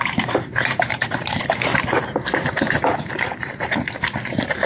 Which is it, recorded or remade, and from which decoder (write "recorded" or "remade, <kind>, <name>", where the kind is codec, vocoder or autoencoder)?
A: remade, vocoder, BigVGAN v2